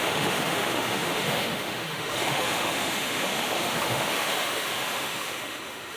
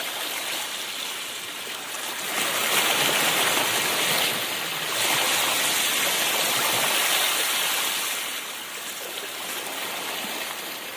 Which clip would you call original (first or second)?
second